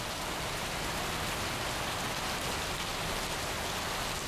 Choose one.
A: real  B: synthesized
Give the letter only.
A